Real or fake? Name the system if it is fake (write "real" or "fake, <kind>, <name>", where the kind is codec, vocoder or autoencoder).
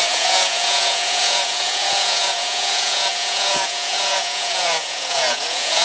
fake, vocoder, Vocos